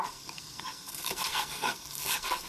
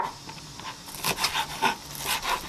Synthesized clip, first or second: first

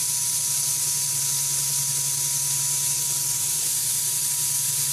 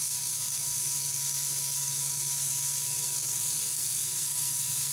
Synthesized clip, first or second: second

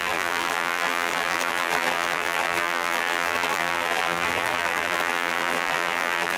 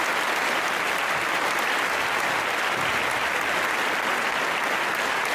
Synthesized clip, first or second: first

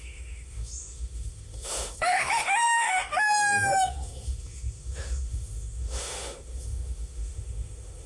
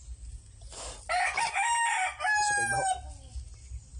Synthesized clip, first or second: first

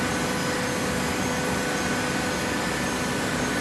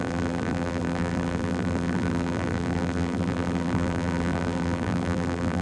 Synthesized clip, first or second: second